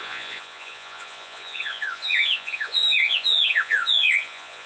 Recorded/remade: remade